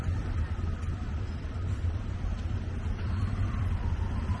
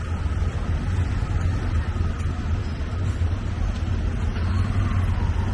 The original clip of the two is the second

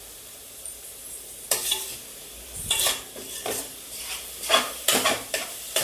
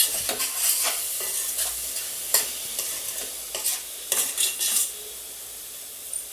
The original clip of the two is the second